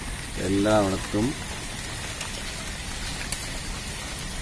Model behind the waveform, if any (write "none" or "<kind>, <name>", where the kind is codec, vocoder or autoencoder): none